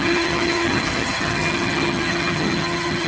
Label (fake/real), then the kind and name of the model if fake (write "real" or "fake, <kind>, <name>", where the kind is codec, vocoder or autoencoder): fake, vocoder, HiFi-GAN